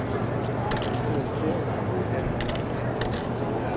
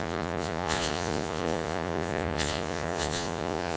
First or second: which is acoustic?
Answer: first